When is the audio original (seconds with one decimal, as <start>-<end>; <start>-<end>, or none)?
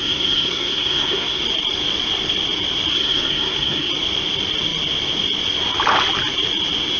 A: 1.4-2.9; 3.9-7.0